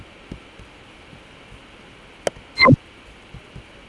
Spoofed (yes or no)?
no